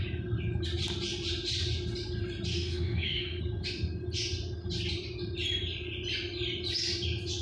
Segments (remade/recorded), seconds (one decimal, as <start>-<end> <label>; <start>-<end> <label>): 0.0-2.5 recorded; 2.5-3.4 remade; 3.4-7.4 recorded